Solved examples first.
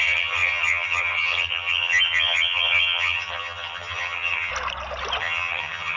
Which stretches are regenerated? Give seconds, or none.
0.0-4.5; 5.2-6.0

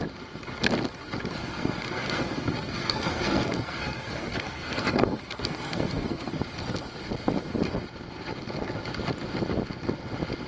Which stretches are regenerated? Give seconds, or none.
1.4-6.4

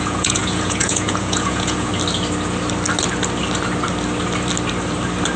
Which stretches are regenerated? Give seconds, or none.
0.0-1.9

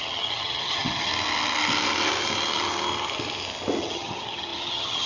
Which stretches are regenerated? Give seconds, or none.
0.0-1.1; 3.8-5.1

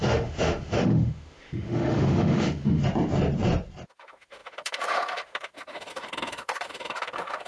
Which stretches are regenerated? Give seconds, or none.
0.0-2.8; 3.9-7.5